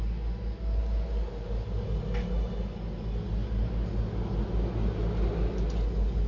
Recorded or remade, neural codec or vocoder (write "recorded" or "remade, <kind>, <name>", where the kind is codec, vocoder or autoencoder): recorded